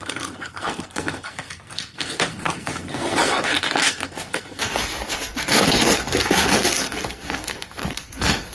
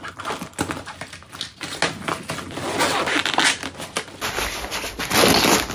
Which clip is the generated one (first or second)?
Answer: first